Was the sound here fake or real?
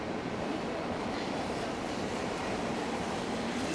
fake